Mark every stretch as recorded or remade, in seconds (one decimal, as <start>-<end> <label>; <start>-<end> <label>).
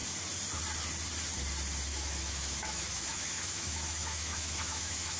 0.0-1.9 recorded; 1.9-5.2 remade